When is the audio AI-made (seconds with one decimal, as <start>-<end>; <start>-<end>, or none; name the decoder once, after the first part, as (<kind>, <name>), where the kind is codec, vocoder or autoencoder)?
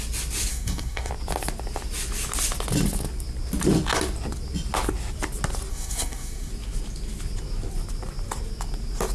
0.5-1.1 (codec, SNAC); 5.7-6.5